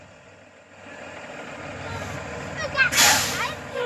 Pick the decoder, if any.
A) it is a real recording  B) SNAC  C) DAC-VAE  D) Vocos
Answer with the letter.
A